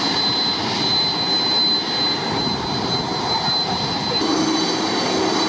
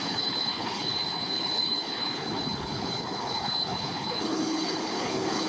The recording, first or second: first